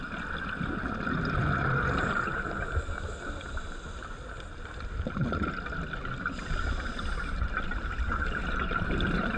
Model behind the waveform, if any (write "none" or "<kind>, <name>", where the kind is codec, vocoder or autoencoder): none